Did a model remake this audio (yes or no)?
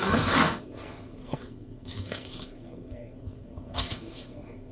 yes